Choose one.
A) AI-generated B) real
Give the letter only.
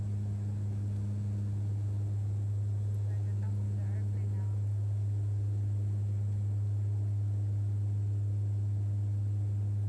B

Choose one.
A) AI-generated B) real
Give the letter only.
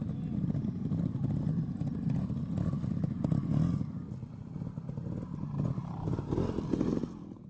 B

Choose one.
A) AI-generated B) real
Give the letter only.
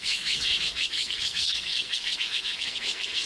A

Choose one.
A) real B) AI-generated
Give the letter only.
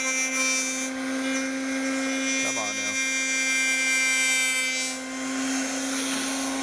A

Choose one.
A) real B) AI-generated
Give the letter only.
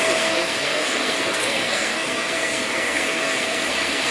B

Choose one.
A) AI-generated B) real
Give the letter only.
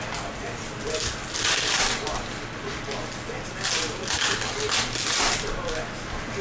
B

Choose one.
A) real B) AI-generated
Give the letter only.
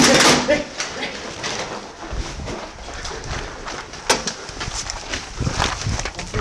A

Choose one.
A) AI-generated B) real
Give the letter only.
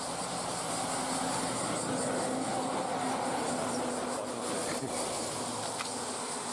B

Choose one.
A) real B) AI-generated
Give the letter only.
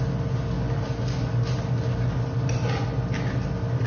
A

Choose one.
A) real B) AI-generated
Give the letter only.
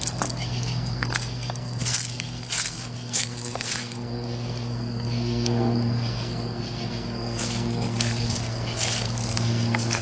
B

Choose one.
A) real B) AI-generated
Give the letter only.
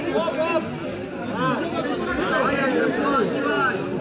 A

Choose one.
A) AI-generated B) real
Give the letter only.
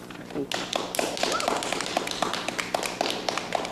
B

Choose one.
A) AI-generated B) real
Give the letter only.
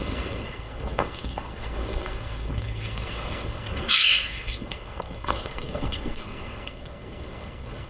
A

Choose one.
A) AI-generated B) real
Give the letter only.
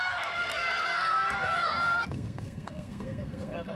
A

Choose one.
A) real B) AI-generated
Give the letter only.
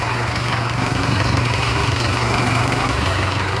B